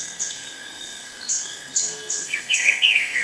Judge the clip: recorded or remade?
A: remade